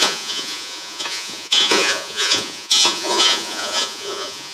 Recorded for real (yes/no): no